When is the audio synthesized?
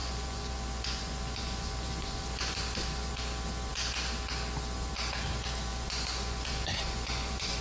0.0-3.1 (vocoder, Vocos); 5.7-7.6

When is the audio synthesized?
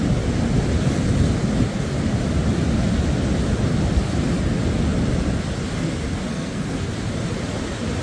6.3-6.9 (codec, SNAC)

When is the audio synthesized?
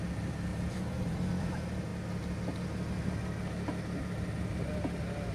0.5-1.3 (vocoder, BigVGAN v2)